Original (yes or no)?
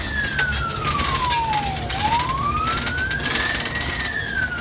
no